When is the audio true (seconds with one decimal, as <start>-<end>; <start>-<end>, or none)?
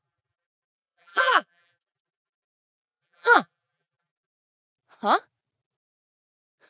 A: 4.6-6.7